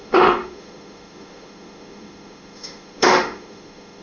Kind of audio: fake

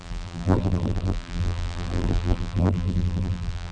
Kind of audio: fake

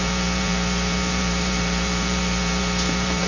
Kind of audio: fake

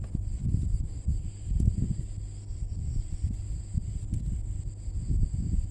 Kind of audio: real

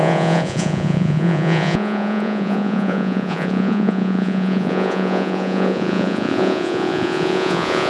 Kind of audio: fake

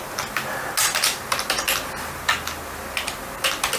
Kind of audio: real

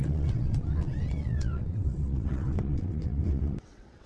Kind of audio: fake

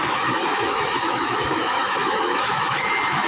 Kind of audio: fake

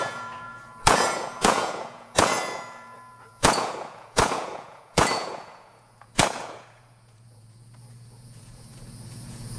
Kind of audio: fake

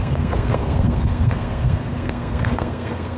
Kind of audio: fake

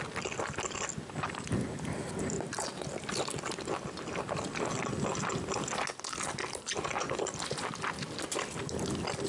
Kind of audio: real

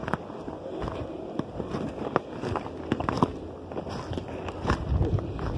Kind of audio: real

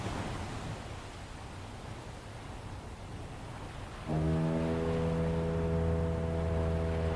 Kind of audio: real